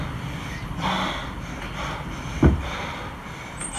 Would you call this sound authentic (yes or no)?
yes